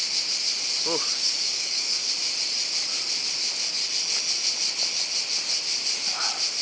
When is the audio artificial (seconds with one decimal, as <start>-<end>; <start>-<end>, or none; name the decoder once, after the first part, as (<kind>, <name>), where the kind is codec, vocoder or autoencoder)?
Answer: 1.1-2.1 (codec, DAC)